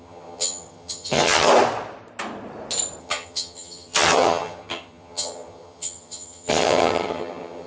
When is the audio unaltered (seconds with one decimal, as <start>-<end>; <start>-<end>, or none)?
1.5-3.0